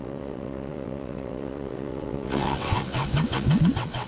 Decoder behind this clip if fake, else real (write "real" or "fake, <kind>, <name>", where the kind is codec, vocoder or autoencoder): fake, vocoder, WaveNeXt